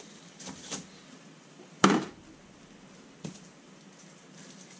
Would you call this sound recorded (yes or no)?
no